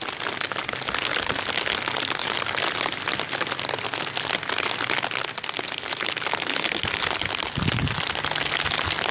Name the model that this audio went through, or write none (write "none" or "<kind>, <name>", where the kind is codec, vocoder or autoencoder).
none